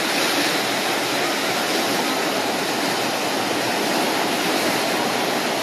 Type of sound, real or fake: real